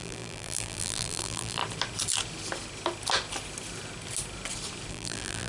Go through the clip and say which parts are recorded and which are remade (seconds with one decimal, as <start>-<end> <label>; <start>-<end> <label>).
0.0-1.6 remade; 1.6-4.9 recorded; 4.9-5.5 remade